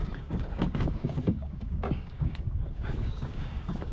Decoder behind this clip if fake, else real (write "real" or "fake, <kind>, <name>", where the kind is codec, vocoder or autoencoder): fake, codec, DAC